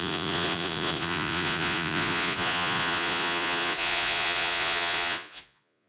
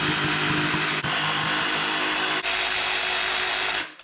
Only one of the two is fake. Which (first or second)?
first